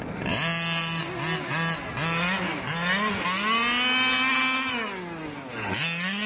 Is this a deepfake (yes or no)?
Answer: no